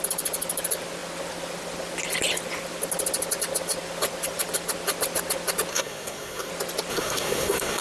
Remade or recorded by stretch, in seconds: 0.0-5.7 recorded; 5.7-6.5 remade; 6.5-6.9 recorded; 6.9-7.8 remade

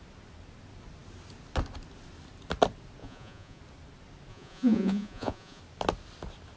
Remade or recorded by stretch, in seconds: 0.0-3.0 recorded; 3.0-3.6 remade; 3.6-4.3 recorded; 4.3-5.6 remade; 5.6-6.6 recorded

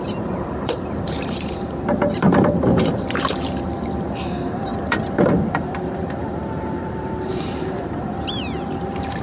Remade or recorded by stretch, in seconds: 0.0-9.2 remade